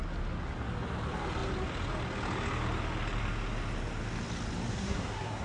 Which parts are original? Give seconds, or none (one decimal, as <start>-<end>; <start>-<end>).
0.0-4.7

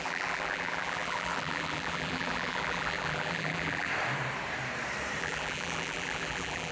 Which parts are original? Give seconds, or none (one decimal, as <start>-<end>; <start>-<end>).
3.9-5.2

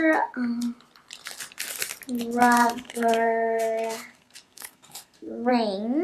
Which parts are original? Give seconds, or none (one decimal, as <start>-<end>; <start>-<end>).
0.0-2.4; 5.5-6.0

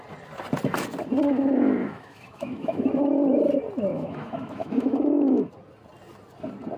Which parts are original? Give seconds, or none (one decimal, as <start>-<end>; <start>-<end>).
0.0-1.8; 2.9-3.9; 5.5-6.8

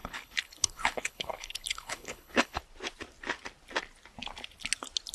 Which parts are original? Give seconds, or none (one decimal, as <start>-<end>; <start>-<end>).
2.6-5.1

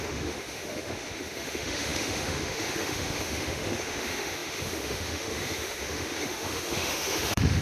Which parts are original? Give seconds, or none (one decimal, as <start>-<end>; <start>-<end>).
none

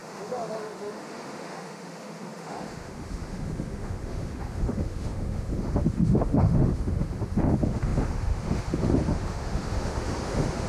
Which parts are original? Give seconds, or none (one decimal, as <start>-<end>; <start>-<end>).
none